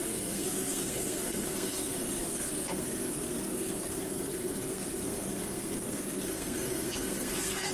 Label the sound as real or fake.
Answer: fake